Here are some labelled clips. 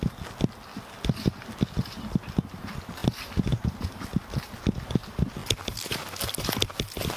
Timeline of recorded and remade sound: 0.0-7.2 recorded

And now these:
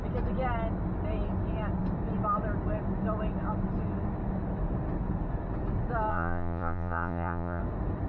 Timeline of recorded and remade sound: 0.0-6.1 recorded; 6.1-7.6 remade; 7.6-8.1 recorded

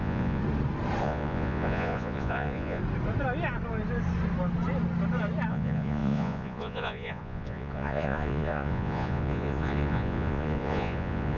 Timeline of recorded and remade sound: 0.0-0.4 remade; 0.4-1.0 recorded; 1.0-2.8 remade; 2.8-5.5 recorded; 5.5-11.4 remade

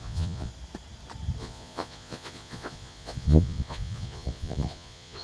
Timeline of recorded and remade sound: 0.0-0.5 remade; 0.5-1.4 recorded; 1.4-5.2 remade

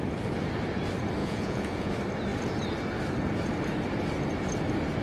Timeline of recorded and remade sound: 0.0-1.2 recorded; 1.2-1.9 remade; 1.9-5.0 recorded